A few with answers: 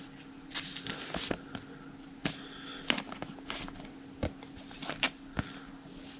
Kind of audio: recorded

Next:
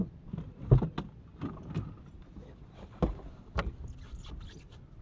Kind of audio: recorded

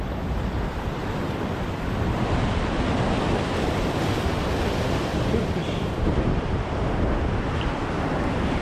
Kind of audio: remade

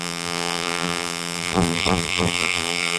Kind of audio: remade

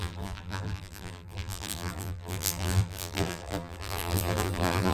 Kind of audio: remade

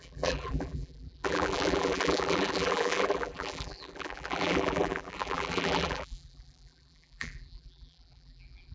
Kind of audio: remade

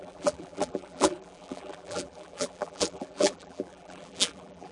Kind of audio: remade